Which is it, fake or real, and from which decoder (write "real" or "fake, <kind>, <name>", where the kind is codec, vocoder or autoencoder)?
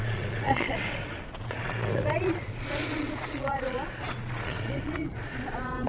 fake, vocoder, Vocos